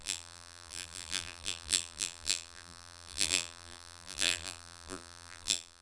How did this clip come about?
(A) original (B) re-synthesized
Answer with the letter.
B